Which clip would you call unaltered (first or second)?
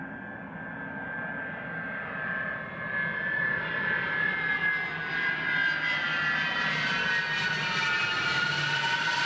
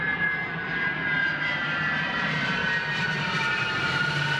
first